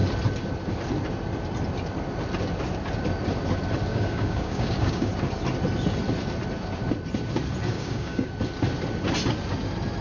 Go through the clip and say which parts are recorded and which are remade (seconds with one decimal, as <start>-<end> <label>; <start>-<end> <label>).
0.0-3.9 recorded; 3.9-5.1 remade; 5.1-7.7 recorded; 7.7-8.3 remade; 8.3-10.0 recorded

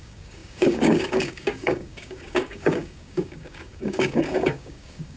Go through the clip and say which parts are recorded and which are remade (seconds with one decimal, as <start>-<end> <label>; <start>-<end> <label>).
0.0-5.2 remade

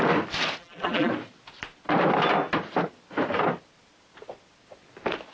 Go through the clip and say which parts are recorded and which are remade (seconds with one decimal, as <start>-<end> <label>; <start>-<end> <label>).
0.0-0.6 recorded; 0.6-1.1 remade; 1.1-5.3 recorded